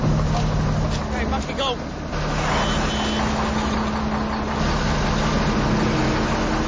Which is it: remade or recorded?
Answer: recorded